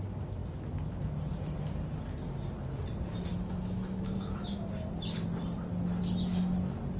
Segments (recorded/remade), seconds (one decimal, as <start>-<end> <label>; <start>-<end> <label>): 0.0-3.3 recorded; 3.3-4.7 remade; 4.7-7.0 recorded